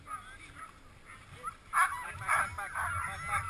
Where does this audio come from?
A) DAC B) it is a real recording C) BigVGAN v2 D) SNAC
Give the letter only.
B